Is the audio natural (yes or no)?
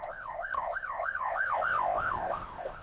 no